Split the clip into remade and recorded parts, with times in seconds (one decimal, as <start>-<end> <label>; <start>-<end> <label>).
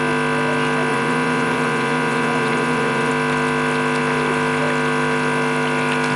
0.0-0.9 recorded; 0.9-3.1 remade; 3.1-6.2 recorded